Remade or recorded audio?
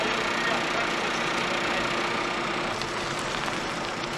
recorded